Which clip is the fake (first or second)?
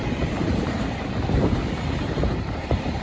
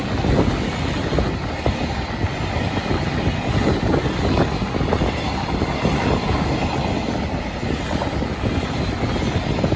first